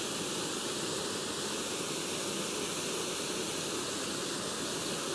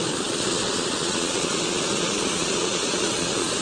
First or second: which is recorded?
first